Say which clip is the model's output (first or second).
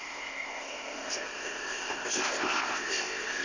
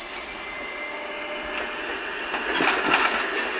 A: first